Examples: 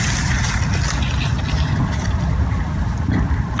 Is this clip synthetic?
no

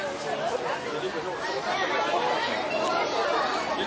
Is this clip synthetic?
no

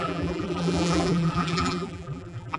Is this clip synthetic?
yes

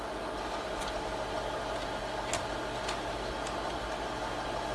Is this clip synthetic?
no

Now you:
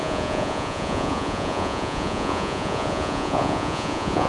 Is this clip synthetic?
yes